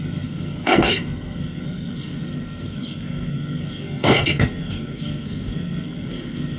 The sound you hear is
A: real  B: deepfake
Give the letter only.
B